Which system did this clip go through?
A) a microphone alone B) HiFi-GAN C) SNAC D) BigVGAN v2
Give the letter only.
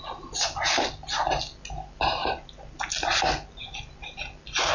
A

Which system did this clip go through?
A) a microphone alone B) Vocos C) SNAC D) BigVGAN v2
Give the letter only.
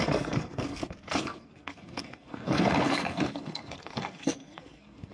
C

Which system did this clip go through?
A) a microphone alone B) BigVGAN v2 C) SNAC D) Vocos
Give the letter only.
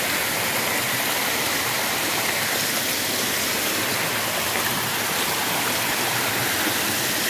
A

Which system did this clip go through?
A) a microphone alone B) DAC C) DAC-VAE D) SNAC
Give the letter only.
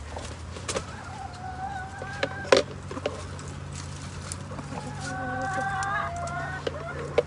A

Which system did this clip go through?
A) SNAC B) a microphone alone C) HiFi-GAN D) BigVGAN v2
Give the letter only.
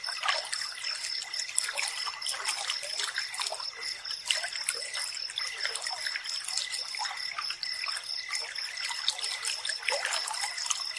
B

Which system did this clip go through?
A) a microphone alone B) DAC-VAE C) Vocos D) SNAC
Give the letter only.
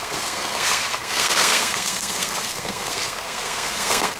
D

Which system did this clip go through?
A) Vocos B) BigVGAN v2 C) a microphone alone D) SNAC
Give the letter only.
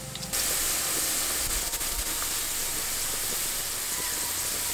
C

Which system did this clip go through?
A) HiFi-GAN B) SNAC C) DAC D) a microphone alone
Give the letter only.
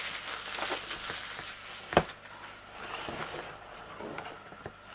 D